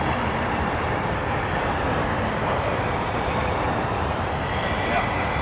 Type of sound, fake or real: fake